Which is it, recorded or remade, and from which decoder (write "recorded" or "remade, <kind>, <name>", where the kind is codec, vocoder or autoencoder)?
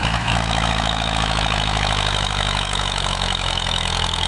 remade, autoencoder, DAC-VAE